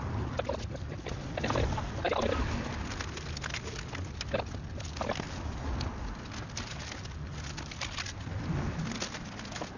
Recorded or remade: recorded